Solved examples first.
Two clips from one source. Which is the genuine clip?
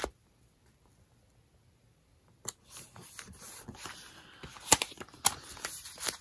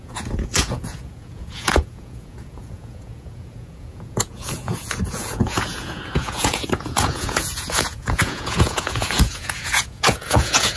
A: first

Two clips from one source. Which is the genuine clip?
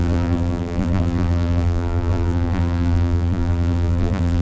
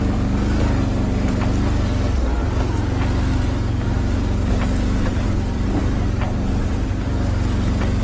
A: second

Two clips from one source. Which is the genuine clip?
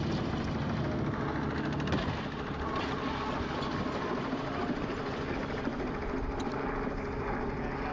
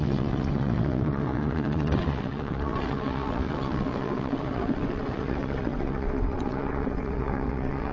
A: first